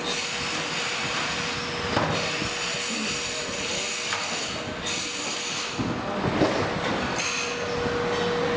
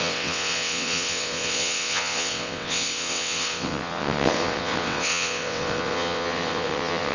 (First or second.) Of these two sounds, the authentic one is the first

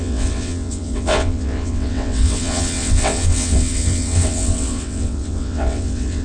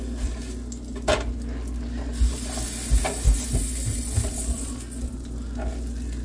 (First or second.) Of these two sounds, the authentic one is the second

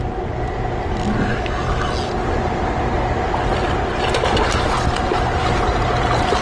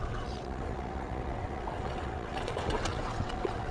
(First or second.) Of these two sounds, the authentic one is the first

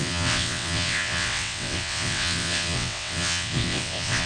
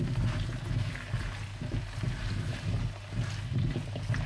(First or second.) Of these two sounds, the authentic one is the second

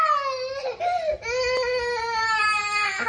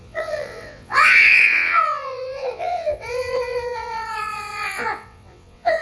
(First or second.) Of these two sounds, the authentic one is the first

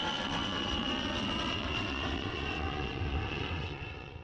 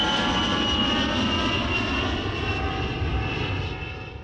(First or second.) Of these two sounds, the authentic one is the second